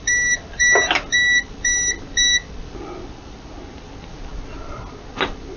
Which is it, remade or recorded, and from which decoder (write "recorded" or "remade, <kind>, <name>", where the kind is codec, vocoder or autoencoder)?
recorded